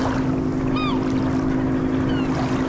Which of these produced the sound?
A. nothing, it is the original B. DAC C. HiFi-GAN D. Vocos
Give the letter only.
A